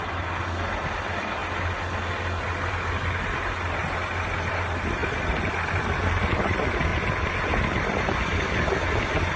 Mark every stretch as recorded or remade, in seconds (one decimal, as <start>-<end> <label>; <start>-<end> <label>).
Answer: 0.0-9.4 recorded